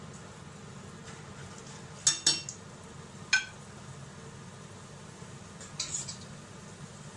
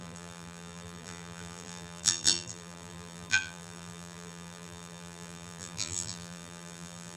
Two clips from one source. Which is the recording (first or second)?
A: first